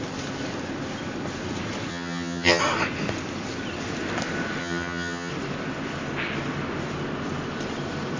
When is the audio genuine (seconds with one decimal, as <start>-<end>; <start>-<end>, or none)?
0.0-1.9; 2.6-4.6; 5.3-8.2